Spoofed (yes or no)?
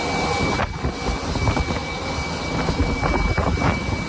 no